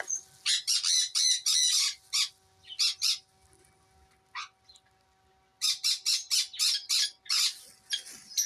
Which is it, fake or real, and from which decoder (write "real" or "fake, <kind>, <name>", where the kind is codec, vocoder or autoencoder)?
real